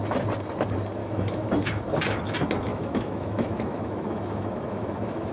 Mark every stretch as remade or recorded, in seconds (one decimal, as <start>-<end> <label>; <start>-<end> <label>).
0.0-1.0 recorded; 1.0-1.5 remade; 1.5-2.7 recorded; 2.7-5.3 remade